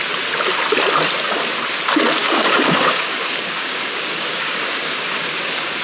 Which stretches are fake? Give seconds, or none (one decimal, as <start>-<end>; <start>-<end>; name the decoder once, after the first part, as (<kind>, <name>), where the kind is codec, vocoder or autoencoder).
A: 2.2-5.8 (codec, DAC)